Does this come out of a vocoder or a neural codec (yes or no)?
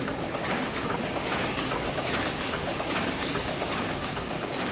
yes